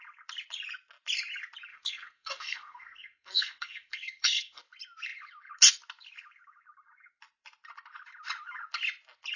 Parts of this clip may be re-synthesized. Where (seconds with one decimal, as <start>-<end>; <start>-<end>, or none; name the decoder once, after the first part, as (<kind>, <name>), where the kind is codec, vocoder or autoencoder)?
1.7-4.6 (codec, SNAC)